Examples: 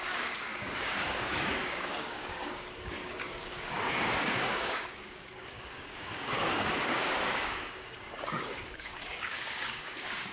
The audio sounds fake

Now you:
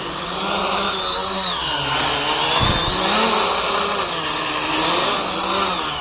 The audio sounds real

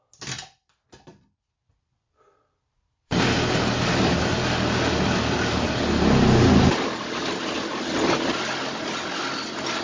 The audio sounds real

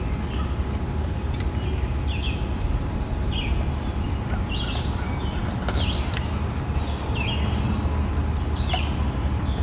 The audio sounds real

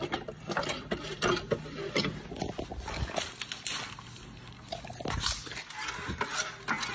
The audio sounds real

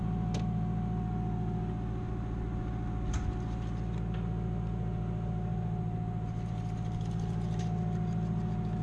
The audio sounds real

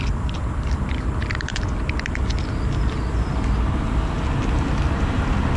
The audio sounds real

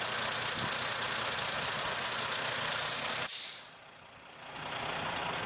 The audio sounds real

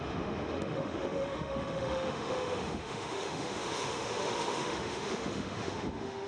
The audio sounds fake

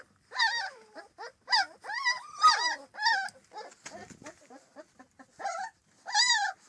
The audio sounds real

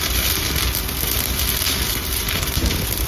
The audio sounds fake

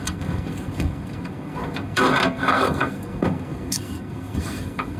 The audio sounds fake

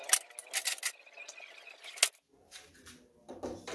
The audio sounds real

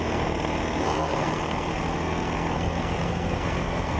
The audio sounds fake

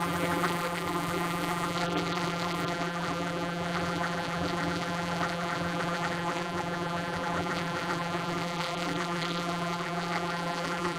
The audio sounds fake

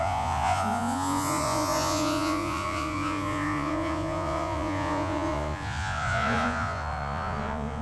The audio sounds fake